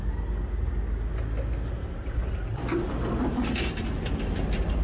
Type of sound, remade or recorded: recorded